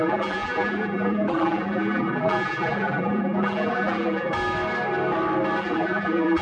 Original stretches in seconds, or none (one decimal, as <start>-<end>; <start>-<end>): 4.3-5.6